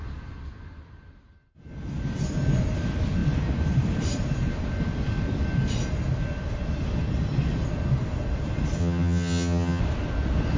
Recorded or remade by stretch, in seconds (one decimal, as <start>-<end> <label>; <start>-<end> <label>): 0.0-8.8 recorded; 8.8-9.8 remade; 9.8-10.6 recorded